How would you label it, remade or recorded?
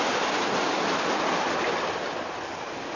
recorded